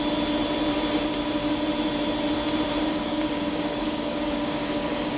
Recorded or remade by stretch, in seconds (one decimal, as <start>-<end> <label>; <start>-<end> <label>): 0.0-2.9 recorded; 2.9-5.2 remade